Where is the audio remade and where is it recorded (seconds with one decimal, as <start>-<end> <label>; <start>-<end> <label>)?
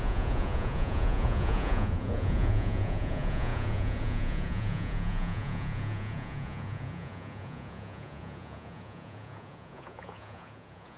0.0-11.0 remade